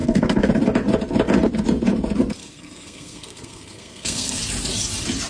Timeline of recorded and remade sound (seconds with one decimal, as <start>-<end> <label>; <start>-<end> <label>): 0.0-0.5 remade; 0.5-2.4 recorded; 2.4-4.4 remade; 4.4-5.3 recorded